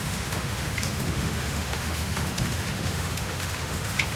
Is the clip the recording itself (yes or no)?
no